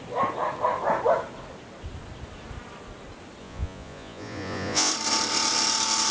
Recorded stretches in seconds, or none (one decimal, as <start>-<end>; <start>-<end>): 0.0-3.4; 4.9-6.1